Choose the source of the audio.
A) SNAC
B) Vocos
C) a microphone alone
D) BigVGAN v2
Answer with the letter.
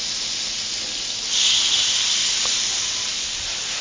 C